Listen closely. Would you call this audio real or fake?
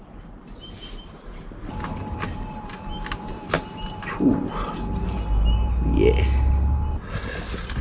real